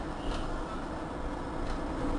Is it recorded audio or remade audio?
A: recorded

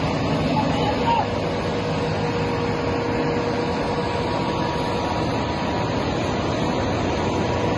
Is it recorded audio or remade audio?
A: recorded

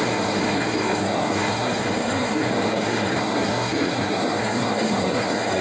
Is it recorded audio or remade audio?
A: remade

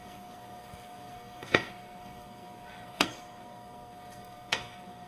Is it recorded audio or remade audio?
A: remade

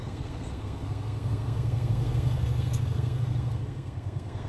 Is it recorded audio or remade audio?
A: remade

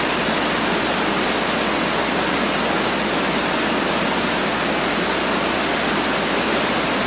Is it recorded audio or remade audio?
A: recorded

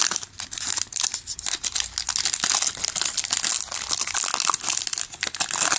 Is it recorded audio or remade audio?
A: recorded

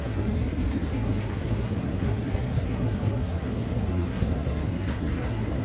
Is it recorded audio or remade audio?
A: remade